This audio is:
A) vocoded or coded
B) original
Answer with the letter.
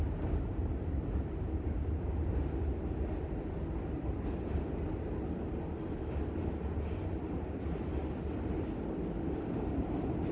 B